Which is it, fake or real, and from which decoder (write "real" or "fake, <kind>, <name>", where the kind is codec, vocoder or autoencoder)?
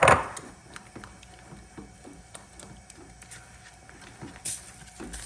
real